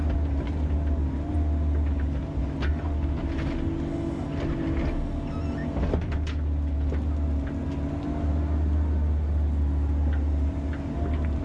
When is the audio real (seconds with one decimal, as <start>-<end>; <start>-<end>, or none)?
0.0-11.4